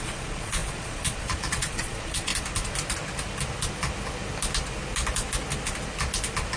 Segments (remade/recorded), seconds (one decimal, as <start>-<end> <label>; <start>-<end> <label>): 0.0-2.3 remade; 2.3-6.6 recorded